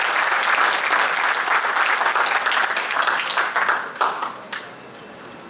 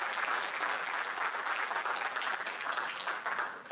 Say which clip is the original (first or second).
first